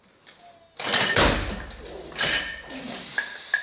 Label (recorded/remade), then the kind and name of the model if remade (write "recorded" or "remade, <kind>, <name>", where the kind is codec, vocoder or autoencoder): recorded